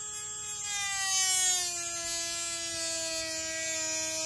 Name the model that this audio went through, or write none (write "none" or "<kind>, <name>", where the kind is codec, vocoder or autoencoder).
none